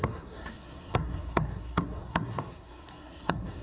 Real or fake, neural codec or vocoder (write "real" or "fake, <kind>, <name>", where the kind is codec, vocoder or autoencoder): fake, codec, SNAC